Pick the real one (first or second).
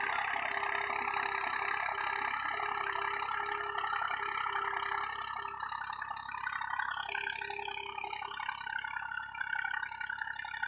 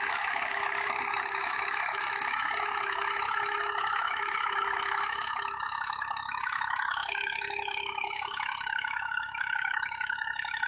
first